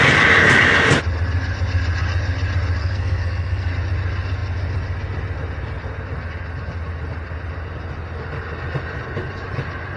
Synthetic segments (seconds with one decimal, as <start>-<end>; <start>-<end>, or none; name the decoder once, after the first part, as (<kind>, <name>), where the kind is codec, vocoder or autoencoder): 2.8-3.7 (codec, SNAC)